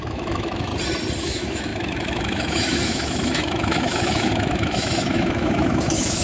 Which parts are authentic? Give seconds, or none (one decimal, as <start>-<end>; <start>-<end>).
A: 0.7-1.2